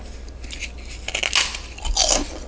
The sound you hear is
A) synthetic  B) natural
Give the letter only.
B